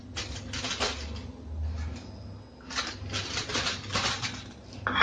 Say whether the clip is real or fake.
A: real